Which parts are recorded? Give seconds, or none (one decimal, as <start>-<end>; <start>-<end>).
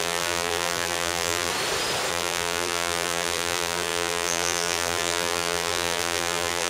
1.5-2.1